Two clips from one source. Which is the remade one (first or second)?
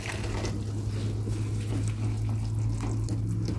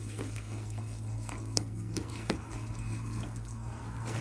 second